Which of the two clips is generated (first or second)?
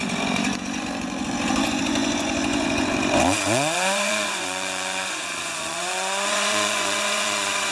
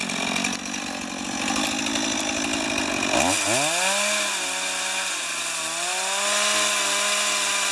first